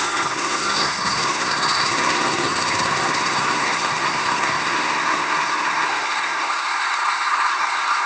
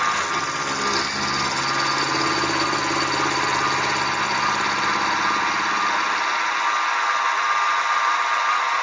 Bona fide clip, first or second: second